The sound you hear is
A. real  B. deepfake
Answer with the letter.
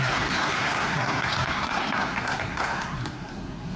B